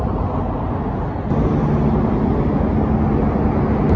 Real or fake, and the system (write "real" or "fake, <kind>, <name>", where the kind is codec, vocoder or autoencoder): real